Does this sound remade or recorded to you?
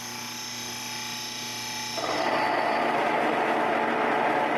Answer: recorded